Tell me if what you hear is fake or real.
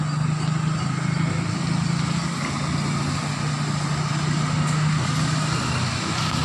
real